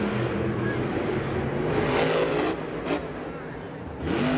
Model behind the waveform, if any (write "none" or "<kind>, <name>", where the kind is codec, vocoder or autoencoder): none